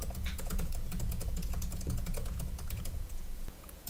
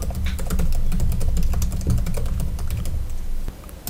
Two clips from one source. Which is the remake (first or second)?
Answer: first